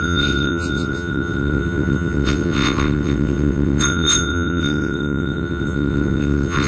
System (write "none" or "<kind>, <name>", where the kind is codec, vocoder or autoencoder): vocoder, WaveNeXt